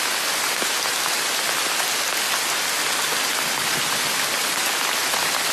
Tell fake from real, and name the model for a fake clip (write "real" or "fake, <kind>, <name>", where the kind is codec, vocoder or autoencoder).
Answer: real